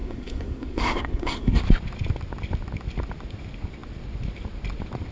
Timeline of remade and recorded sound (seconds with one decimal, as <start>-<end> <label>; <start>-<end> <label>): 0.0-1.6 remade; 1.6-5.1 recorded

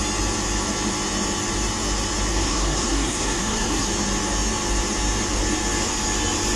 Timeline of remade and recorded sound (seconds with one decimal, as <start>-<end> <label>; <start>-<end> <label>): 0.0-2.3 recorded; 2.3-3.9 remade; 3.9-6.5 recorded

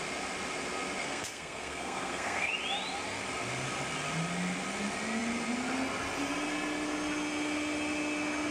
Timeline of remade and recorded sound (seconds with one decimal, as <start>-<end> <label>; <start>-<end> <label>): 0.0-1.0 recorded; 1.0-2.5 remade; 2.5-8.5 recorded

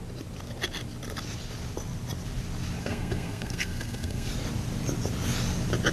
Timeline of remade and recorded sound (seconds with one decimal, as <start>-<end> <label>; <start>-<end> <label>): 0.0-2.8 recorded; 2.8-4.3 remade; 4.3-5.9 recorded

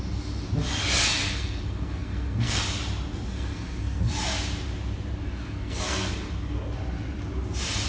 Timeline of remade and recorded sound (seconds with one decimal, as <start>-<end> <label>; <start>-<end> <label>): 0.0-1.2 recorded; 1.2-2.6 remade; 2.6-3.3 recorded; 3.3-4.1 remade; 4.1-5.4 recorded; 5.4-6.1 remade; 6.1-7.9 recorded